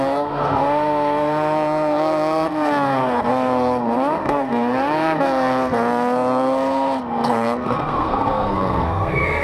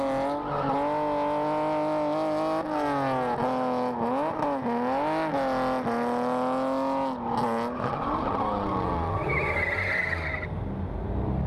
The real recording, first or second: second